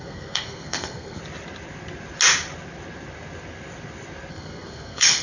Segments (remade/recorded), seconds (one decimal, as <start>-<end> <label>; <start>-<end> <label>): 0.0-1.2 remade; 1.2-4.3 recorded; 4.3-5.2 remade